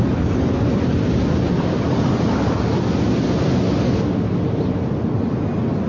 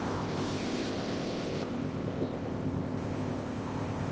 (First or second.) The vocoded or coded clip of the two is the second